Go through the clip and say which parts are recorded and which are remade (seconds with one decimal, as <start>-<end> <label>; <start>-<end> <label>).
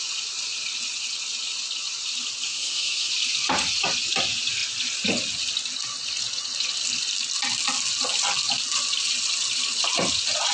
0.0-2.5 recorded; 2.5-3.1 remade; 3.1-10.5 recorded